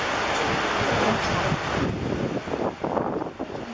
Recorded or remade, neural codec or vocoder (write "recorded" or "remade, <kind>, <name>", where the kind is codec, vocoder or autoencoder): recorded